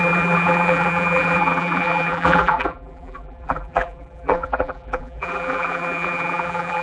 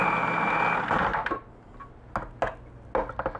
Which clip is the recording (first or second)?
second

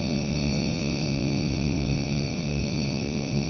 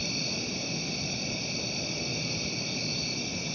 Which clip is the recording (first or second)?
second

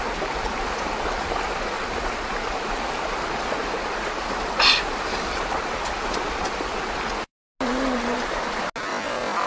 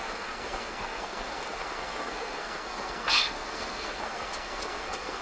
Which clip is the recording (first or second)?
first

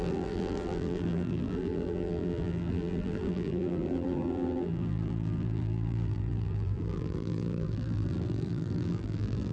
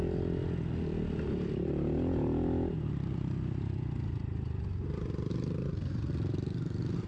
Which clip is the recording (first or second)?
second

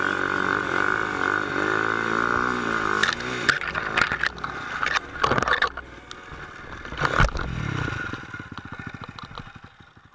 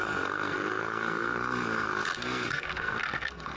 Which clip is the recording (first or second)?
first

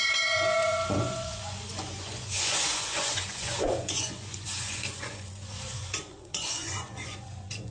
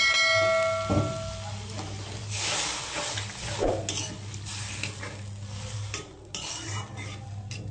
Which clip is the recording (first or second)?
second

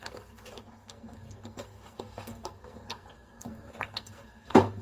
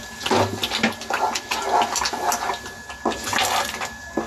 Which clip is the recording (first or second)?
second